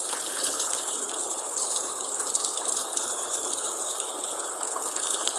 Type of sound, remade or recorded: remade